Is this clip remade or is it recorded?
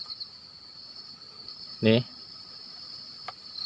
recorded